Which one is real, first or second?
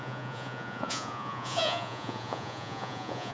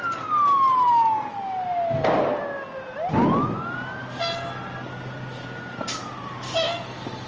second